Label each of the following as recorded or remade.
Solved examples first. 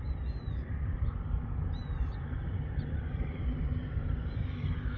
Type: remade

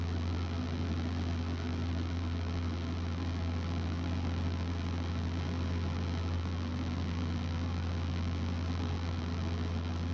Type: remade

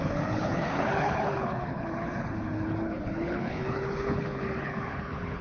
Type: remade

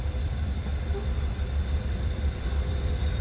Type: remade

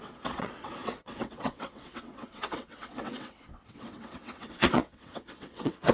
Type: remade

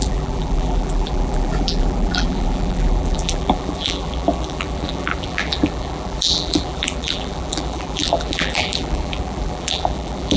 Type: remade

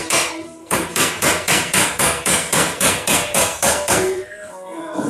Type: remade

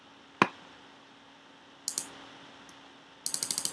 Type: recorded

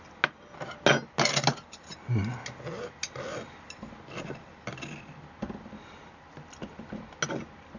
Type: recorded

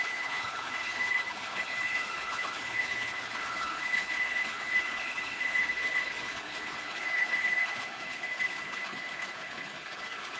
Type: remade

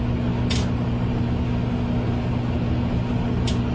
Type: recorded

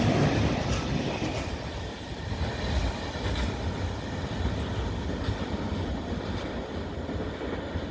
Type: recorded